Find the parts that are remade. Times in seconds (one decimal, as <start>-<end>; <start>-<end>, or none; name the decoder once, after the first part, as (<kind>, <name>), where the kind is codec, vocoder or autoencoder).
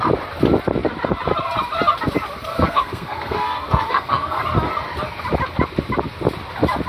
2.5-4.4 (codec, SNAC)